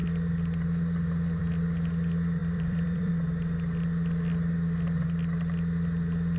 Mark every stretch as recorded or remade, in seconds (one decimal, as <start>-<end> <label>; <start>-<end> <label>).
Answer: 0.0-2.4 recorded; 2.4-3.1 remade; 3.1-6.4 recorded